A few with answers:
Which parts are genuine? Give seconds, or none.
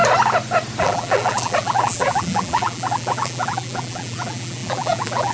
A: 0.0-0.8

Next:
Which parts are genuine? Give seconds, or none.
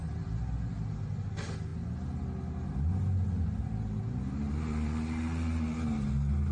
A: 0.0-6.5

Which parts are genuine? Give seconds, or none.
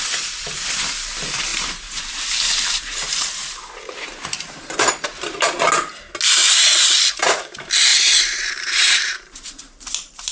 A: 0.0-1.5; 4.7-6.4; 6.9-7.9; 9.6-10.3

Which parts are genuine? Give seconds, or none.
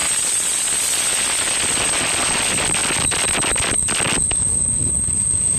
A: 1.0-5.6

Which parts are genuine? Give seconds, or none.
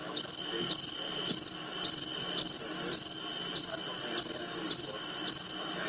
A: 0.0-3.3; 4.0-5.9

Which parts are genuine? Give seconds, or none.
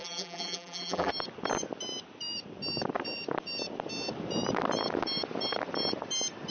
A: 1.1-6.5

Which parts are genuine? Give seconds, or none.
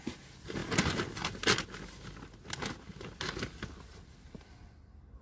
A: 0.0-5.2